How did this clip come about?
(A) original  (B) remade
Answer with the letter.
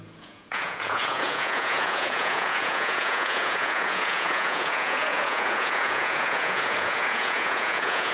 B